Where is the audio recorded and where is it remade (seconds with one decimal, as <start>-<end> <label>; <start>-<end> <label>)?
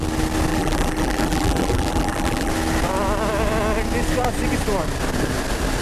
0.0-0.5 recorded; 0.5-2.5 remade; 2.5-5.8 recorded